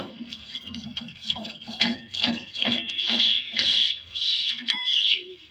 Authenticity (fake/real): fake